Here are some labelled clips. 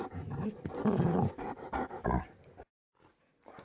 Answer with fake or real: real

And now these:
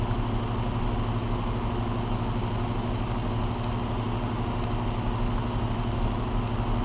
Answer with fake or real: real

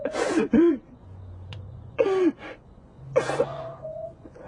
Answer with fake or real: fake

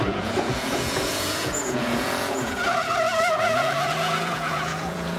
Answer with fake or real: fake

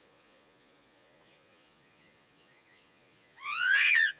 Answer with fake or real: fake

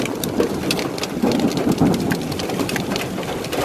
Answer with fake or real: real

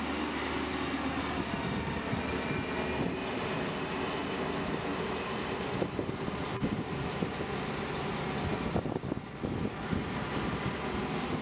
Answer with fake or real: real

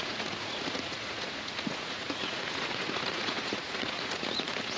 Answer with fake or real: fake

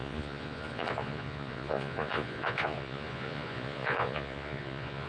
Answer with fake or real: fake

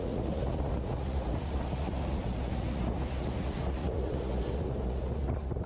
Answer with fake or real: fake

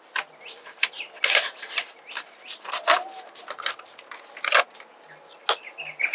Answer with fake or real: real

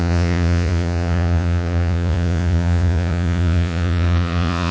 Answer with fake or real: fake